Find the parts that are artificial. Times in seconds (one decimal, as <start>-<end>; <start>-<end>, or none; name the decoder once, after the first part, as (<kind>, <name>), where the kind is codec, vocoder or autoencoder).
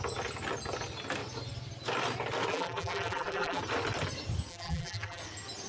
2.5-3.6 (vocoder, BigVGAN v2); 4.5-5.2